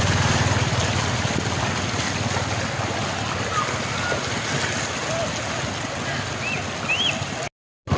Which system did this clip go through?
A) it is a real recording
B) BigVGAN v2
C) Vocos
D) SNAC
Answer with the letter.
A